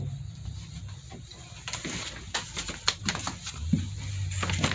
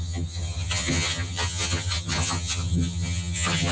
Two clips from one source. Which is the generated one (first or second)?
second